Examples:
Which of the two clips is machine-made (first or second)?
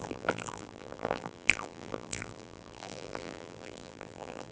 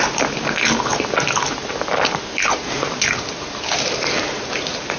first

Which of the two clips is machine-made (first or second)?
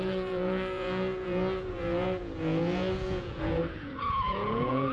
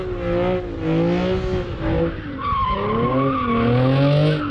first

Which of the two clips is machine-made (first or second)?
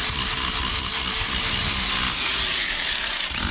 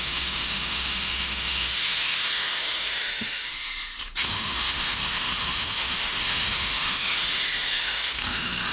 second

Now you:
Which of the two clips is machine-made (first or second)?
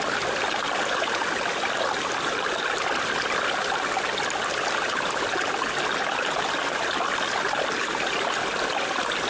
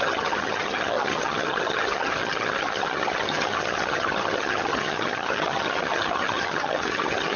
second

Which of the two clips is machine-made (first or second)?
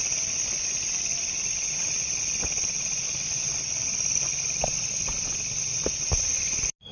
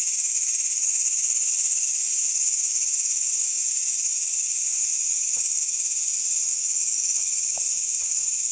second